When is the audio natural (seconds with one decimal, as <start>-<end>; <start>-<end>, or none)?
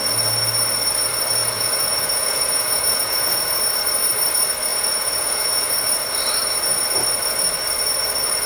0.0-1.4; 3.6-4.7; 5.7-8.5